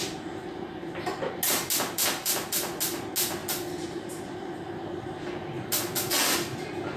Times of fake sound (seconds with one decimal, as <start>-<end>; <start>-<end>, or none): none